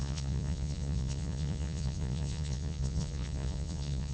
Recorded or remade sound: remade